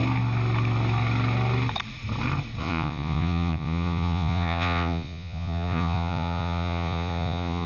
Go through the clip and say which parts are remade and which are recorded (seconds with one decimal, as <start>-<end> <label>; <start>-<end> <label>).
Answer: 0.0-2.6 recorded; 2.6-7.7 remade